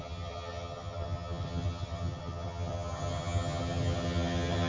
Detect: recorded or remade remade